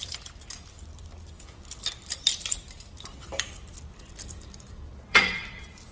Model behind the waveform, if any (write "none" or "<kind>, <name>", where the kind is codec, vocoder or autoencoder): vocoder, BigVGAN v2